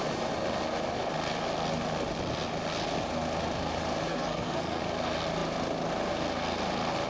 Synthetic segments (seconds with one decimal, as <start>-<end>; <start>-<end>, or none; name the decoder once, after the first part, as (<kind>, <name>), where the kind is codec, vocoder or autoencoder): 4.1-4.8 (codec, SNAC)